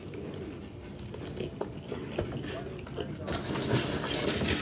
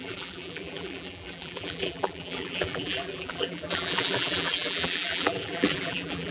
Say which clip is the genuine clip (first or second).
first